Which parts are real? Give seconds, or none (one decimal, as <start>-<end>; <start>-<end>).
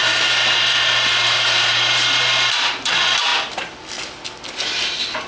2.9-5.3